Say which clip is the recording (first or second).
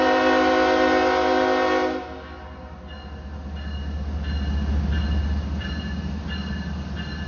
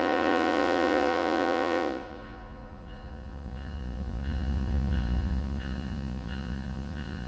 first